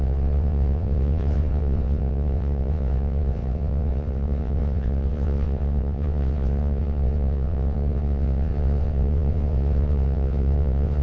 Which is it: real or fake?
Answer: fake